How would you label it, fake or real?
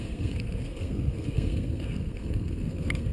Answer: fake